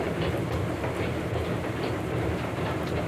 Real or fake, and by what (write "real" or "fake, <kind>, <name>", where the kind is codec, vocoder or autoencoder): fake, vocoder, BigVGAN v2